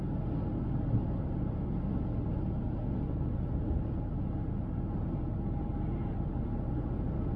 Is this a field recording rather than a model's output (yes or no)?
yes